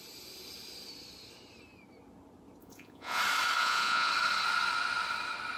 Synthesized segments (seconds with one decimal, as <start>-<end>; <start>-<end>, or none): 2.6-3.2; 3.6-4.1